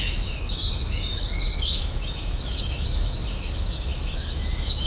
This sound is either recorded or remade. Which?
remade